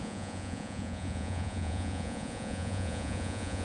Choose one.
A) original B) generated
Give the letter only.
B